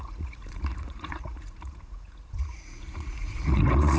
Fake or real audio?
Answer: fake